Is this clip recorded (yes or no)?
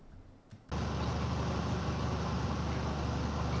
yes